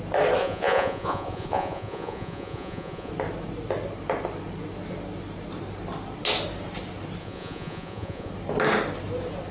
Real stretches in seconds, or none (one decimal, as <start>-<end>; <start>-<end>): 0.0-0.4; 3.1-7.2; 8.3-9.5